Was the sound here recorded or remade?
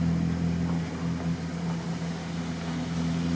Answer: recorded